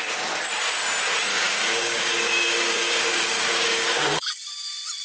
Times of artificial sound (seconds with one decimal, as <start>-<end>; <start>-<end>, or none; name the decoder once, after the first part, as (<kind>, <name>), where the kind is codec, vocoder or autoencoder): 1.3-4.3 (codec, DAC)